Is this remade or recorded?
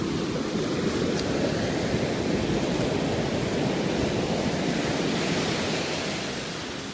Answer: recorded